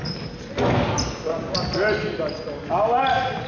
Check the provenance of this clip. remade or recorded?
recorded